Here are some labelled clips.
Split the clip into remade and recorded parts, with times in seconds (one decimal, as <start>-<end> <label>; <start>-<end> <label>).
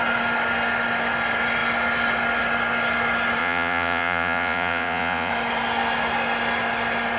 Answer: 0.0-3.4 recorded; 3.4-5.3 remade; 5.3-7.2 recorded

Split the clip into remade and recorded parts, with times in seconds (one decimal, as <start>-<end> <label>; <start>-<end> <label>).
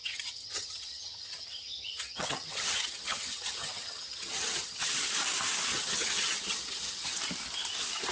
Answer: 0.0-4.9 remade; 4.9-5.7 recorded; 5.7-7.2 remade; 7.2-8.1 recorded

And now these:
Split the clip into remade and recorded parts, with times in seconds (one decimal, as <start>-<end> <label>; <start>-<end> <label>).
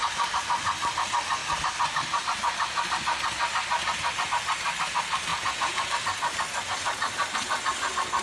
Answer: 0.0-5.3 recorded; 5.3-5.9 remade; 5.9-8.2 recorded